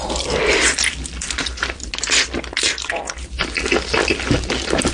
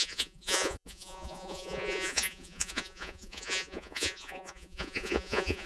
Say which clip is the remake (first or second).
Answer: second